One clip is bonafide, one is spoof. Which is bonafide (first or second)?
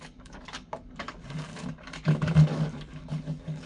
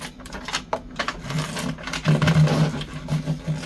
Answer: second